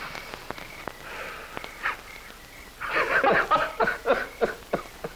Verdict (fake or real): real